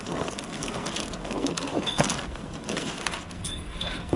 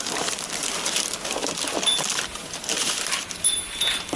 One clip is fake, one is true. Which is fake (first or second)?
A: first